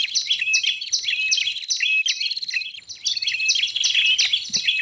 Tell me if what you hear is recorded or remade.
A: recorded